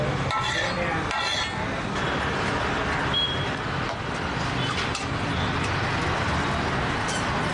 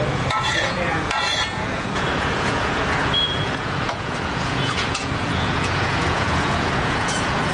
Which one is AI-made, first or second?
second